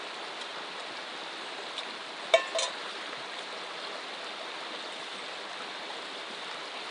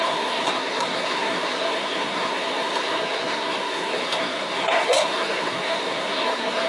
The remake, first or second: second